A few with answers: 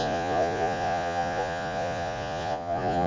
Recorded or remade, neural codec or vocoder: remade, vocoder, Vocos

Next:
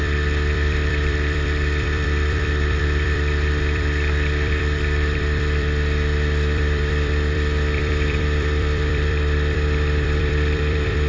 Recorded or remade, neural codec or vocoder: remade, vocoder, BigVGAN v2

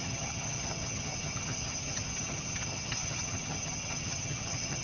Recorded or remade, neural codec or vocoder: remade, vocoder, HiFi-GAN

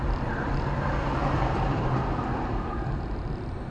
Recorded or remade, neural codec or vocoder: remade, vocoder, BigVGAN v2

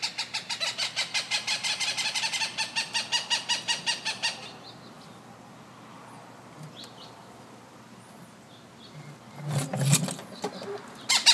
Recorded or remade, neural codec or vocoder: recorded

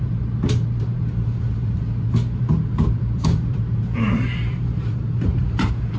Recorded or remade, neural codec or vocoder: remade, vocoder, BigVGAN v2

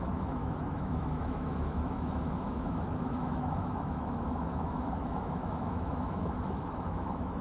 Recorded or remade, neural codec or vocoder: remade, autoencoder, DAC-VAE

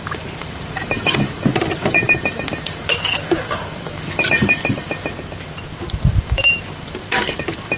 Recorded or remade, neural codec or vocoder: remade, vocoder, BigVGAN v2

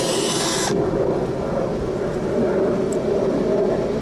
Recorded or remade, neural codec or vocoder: remade, vocoder, BigVGAN v2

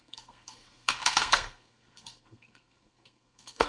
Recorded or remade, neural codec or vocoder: remade, codec, SNAC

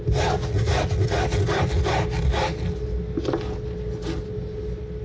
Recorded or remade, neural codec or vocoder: recorded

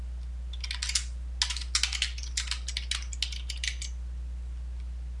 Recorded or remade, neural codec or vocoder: recorded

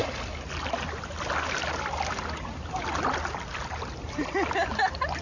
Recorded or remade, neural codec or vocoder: recorded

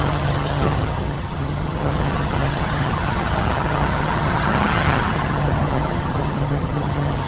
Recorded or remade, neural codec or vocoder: remade, vocoder, HiFi-GAN